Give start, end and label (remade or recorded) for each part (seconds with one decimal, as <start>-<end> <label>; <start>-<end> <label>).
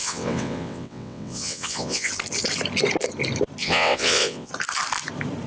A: 0.0-2.1 remade; 2.1-3.6 recorded; 3.6-4.5 remade; 4.5-5.5 recorded